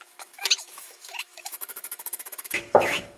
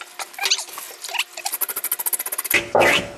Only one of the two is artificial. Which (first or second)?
first